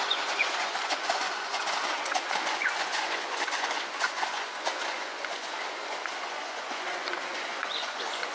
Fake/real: fake